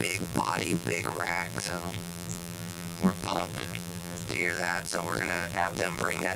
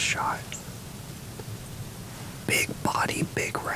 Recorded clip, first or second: second